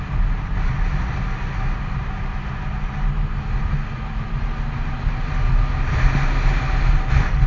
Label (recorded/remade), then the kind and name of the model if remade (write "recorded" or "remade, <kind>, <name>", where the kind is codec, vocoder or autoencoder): recorded